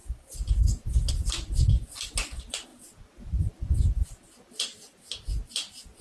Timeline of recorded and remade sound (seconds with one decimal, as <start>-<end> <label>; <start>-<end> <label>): 0.0-6.0 recorded